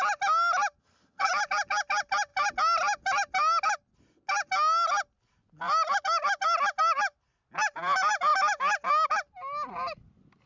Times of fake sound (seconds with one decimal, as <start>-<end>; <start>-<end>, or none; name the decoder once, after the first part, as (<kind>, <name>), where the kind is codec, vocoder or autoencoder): 0.8-1.3 (vocoder, HiFi-GAN)